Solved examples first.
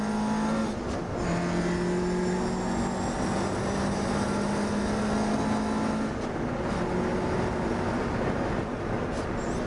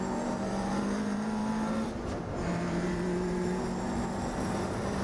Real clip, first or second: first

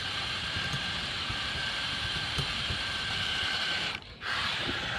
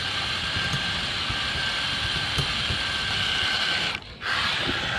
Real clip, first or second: second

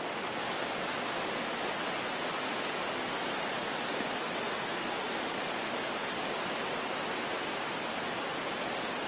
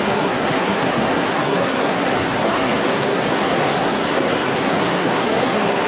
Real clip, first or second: first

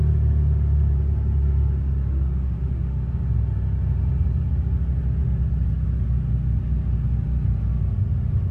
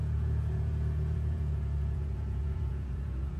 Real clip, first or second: first